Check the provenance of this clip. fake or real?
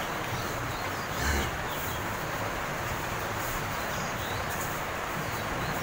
real